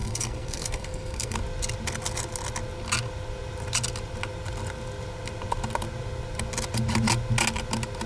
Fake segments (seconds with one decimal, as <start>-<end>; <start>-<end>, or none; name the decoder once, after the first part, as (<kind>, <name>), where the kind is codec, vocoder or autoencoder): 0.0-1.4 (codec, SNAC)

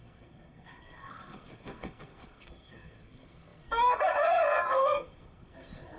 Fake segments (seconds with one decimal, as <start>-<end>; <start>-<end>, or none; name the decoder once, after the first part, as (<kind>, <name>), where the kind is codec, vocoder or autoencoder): 0.0-6.0 (codec, SNAC)

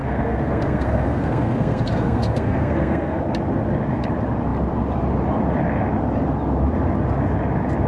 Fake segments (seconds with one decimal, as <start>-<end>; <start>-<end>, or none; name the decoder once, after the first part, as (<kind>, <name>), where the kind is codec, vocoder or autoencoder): 0.0-3.2 (codec, SNAC)

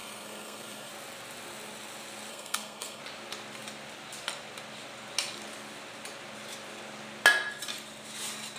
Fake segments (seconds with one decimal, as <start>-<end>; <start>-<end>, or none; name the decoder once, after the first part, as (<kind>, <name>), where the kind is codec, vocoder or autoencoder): 0.0-0.9 (codec, SNAC); 2.3-3.0

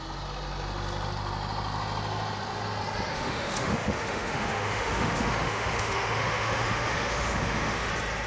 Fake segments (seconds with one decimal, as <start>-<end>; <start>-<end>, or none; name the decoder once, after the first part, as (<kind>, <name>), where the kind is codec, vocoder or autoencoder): 3.1-7.9 (autoencoder, DAC-VAE)

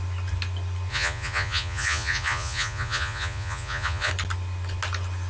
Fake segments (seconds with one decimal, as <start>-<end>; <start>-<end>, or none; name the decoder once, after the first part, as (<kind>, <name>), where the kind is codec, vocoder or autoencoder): 0.9-4.1 (vocoder, Vocos)

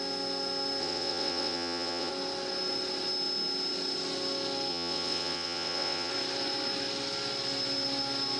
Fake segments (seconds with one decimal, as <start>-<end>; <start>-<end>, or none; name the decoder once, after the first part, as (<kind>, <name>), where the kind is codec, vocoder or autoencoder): 0.8-2.1 (vocoder, WaveNeXt); 4.7-6.1

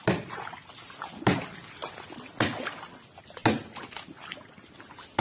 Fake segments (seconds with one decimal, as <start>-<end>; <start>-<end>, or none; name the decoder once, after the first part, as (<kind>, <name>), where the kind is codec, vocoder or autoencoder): none